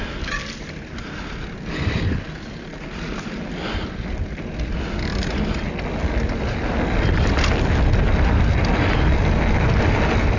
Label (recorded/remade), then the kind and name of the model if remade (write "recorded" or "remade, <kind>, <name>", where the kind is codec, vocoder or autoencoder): recorded